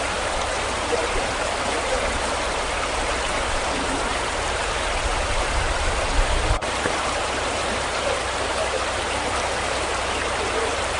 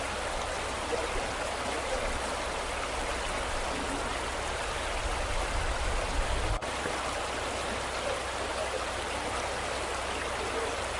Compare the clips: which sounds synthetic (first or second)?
first